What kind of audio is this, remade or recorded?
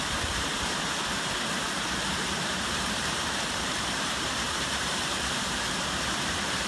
remade